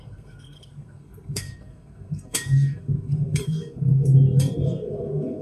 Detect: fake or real fake